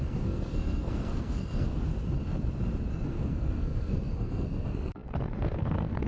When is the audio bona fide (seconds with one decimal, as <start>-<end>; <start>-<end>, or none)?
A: 1.9-2.9